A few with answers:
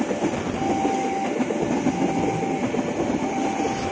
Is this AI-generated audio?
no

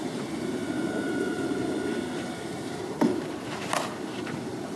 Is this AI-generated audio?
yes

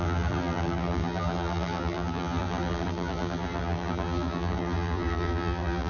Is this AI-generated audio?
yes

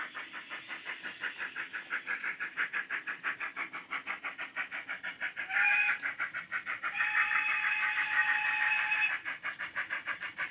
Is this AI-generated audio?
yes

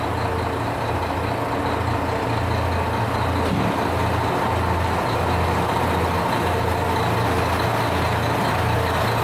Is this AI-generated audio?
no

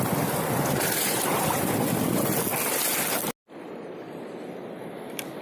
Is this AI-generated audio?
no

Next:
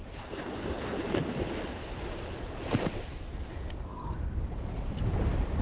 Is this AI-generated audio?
yes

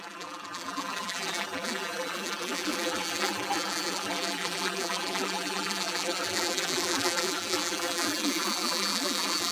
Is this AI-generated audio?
yes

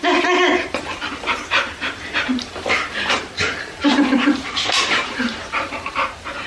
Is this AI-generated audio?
yes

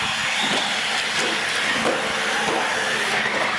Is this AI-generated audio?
no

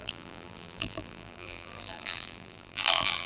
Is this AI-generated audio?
yes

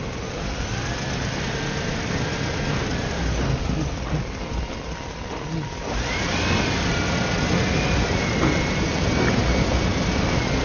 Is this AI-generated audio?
yes